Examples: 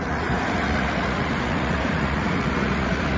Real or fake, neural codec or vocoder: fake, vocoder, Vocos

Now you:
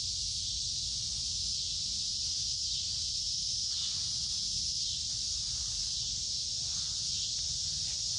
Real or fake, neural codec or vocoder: real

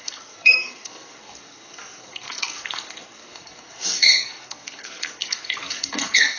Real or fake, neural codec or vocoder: fake, codec, SNAC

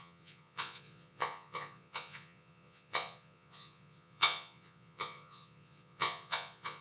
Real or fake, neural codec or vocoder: fake, vocoder, Vocos